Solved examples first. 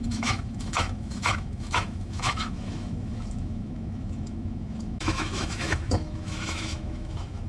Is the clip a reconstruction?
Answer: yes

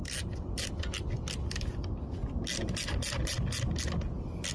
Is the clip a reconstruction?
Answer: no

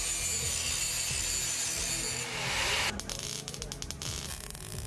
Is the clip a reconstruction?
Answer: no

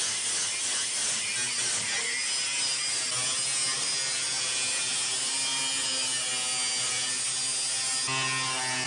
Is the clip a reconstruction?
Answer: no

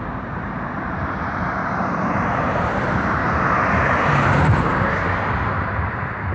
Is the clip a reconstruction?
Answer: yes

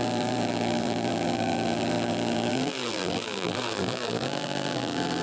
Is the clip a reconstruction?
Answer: yes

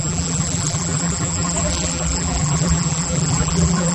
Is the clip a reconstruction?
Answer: yes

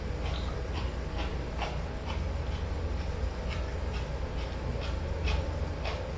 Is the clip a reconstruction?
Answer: no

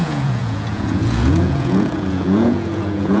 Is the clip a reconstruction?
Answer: yes